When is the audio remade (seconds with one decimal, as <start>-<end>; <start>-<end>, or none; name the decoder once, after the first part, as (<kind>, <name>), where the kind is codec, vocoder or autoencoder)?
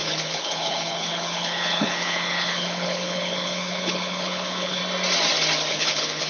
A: 0.0-4.8 (codec, HILCodec); 5.7-6.3